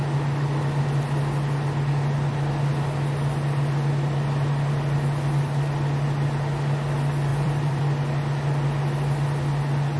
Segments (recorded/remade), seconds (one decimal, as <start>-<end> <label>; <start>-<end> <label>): 0.0-7.3 recorded; 7.3-7.8 remade; 7.8-10.0 recorded